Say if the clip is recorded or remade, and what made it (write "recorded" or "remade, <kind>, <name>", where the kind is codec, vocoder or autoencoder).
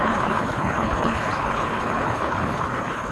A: remade, codec, HILCodec